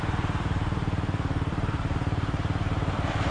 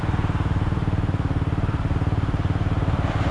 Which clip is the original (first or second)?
second